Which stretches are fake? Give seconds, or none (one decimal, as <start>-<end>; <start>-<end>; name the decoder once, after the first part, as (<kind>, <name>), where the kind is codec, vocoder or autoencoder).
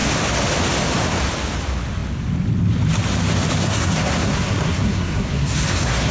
3.6-6.1 (codec, SNAC)